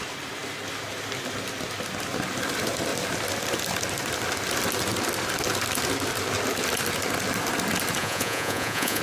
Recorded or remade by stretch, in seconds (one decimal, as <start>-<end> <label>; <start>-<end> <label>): 0.0-8.0 recorded; 8.0-9.0 remade